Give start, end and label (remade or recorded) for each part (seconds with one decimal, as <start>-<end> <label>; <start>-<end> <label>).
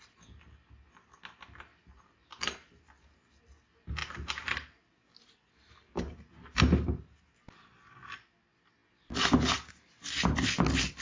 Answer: 0.0-1.7 recorded; 1.7-3.4 remade; 3.4-4.0 recorded; 4.0-6.6 remade; 6.6-11.0 recorded